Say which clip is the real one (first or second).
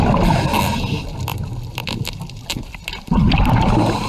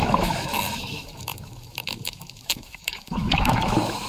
first